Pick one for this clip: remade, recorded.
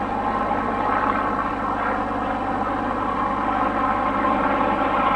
recorded